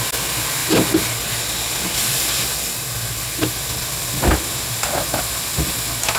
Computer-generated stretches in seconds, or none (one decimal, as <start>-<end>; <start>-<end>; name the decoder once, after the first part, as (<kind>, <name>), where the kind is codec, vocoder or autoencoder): none